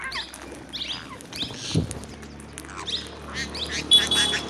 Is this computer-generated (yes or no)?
no